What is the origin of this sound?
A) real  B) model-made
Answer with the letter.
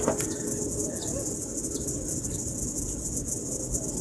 A